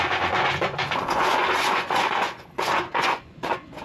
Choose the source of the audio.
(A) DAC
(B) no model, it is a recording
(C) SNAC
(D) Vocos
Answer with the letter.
D